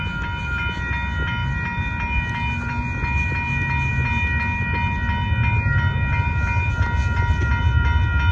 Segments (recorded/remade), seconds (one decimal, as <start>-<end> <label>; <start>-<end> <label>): 0.0-8.3 recorded